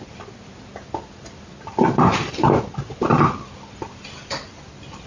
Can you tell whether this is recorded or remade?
recorded